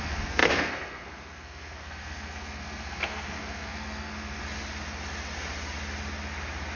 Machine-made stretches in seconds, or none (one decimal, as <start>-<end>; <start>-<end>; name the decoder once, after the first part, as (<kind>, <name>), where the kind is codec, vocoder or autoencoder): 0.0-4.4 (codec, SNAC)